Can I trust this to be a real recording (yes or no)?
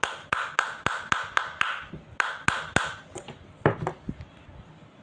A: yes